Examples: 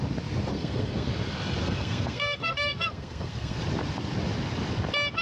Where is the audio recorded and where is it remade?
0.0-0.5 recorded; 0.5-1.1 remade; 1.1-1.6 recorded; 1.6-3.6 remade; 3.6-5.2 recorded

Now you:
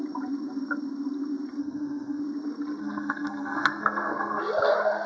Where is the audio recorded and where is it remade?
0.0-1.6 recorded; 1.6-2.2 remade; 2.2-2.8 recorded; 2.8-4.4 remade; 4.4-5.1 recorded